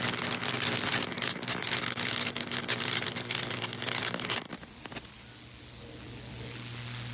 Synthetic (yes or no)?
no